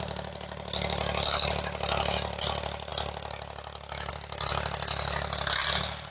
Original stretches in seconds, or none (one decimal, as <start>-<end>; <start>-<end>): 0.0-6.1